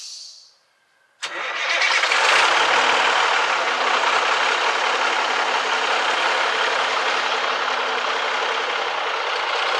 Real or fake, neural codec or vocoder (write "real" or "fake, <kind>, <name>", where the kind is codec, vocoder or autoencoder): real